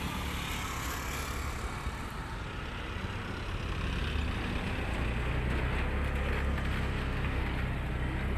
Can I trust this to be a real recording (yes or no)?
yes